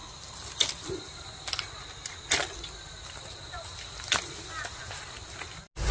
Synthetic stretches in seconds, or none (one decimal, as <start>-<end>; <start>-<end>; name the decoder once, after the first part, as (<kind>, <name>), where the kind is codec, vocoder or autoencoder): none